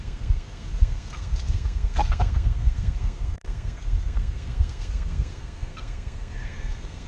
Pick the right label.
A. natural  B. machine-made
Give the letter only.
B